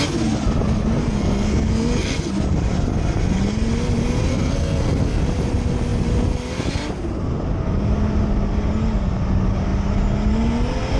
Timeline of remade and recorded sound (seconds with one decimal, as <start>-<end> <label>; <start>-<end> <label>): 0.0-1.0 recorded; 1.0-2.3 remade; 2.3-4.3 recorded; 4.3-5.2 remade; 5.2-11.0 recorded